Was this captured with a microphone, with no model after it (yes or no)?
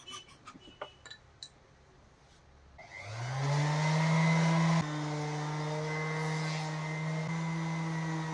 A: yes